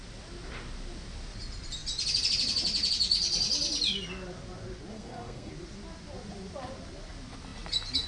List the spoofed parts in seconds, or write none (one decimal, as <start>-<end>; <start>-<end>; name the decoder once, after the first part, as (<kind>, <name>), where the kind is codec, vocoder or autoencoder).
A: 4.9-5.5 (codec, SNAC)